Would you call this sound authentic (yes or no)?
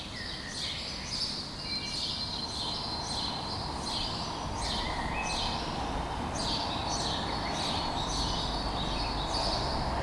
yes